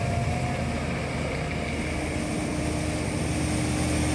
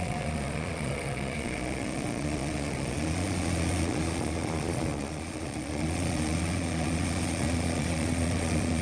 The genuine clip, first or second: first